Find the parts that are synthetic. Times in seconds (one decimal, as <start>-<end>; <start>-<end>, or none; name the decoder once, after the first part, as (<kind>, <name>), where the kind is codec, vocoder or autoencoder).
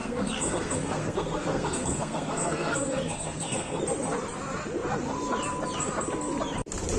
0.0-3.8 (codec, SNAC)